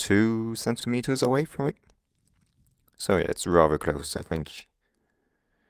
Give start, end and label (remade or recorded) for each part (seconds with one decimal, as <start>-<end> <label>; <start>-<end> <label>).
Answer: 0.0-0.8 recorded; 0.8-1.7 remade; 1.7-4.0 recorded; 4.0-5.3 remade; 5.3-5.7 recorded